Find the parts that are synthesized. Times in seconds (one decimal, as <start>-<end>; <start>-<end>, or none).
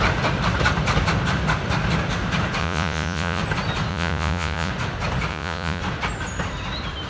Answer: 2.6-3.4; 3.9-4.7; 5.3-5.8